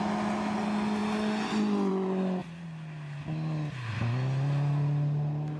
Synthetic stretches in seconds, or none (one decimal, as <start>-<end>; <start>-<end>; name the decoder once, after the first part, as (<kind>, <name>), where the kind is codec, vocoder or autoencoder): none